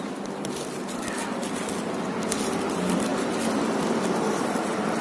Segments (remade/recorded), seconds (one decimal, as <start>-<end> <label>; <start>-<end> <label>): 0.0-3.1 recorded; 3.1-4.3 remade; 4.3-5.0 recorded